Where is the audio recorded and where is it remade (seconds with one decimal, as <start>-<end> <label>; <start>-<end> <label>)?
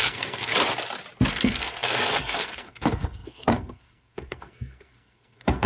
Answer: 0.0-0.5 remade; 0.5-1.3 recorded; 1.3-5.7 remade